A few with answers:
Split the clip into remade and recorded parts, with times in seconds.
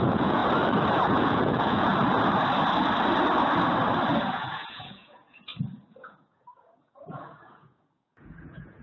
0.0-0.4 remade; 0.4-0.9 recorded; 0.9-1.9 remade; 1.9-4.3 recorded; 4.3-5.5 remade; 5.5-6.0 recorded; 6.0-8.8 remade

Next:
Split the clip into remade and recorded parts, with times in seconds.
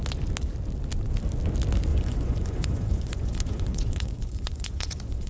0.0-1.9 recorded; 1.9-5.3 remade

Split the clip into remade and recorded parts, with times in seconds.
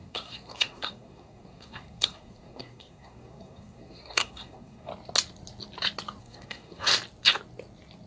0.0-4.9 remade; 4.9-6.2 recorded; 6.2-6.9 remade; 6.9-8.1 recorded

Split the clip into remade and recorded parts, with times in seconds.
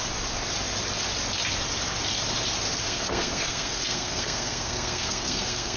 0.0-2.8 recorded; 2.8-5.8 remade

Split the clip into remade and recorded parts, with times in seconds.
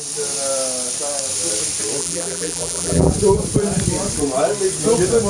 0.0-2.0 recorded; 2.0-3.1 remade; 3.1-5.3 recorded